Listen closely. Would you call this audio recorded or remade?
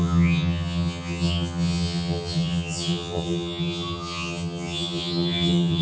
remade